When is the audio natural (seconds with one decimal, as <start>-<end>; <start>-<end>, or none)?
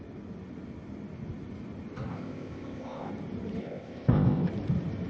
0.0-2.1; 3.1-3.6; 4.5-5.1